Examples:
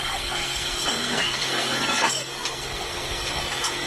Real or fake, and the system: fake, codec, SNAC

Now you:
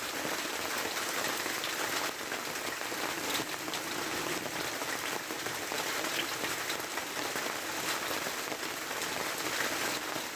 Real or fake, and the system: real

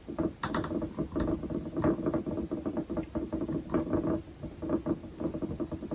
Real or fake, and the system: real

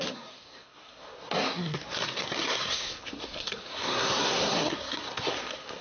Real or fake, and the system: fake, codec, SNAC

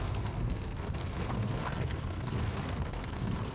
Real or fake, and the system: fake, codec, SNAC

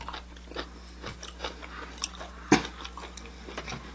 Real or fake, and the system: real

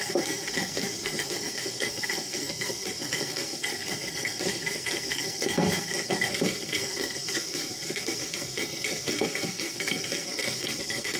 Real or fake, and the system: fake, codec, SNAC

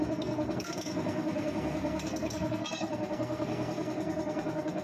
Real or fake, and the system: fake, codec, SNAC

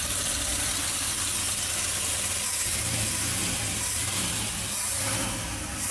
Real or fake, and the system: real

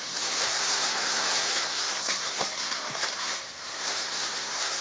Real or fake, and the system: fake, codec, SNAC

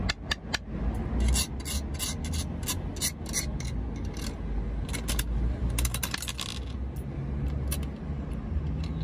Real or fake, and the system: real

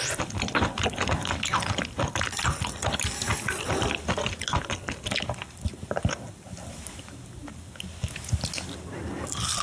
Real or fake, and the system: real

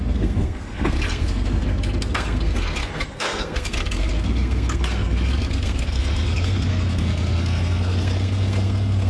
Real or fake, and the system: fake, codec, SNAC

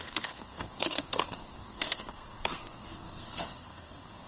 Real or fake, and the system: fake, codec, SNAC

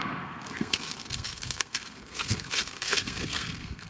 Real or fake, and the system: fake, codec, SNAC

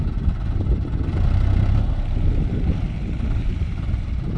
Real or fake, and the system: real